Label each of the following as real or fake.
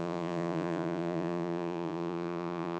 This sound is fake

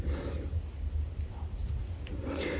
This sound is real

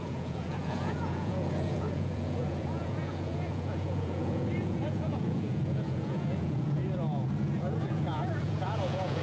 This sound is fake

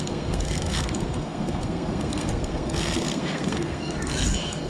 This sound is fake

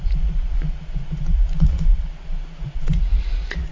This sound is fake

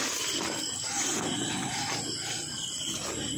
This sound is real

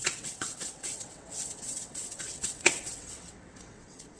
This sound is fake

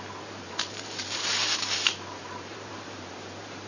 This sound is fake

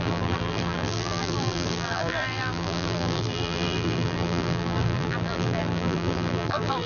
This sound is fake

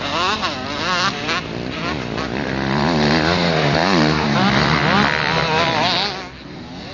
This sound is real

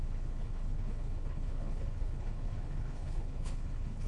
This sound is fake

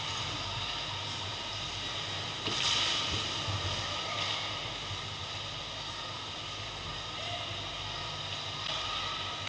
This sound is real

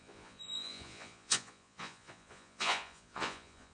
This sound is fake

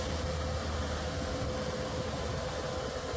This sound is real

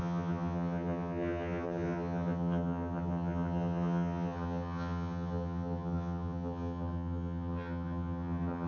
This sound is fake